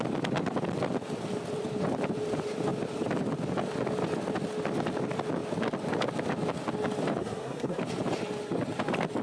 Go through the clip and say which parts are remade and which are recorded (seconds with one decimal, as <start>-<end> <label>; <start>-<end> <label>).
0.0-7.2 recorded; 7.2-7.8 remade; 7.8-9.2 recorded